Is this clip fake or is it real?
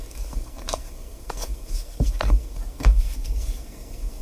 fake